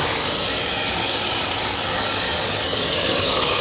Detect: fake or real fake